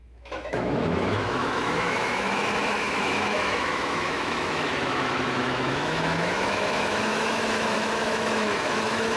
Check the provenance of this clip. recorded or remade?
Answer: remade